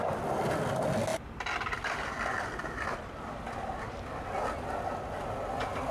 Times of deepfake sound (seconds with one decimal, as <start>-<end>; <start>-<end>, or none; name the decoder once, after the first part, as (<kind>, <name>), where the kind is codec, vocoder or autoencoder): none